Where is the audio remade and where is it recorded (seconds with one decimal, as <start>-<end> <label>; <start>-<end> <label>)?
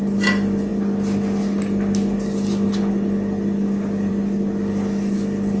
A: 0.0-5.6 recorded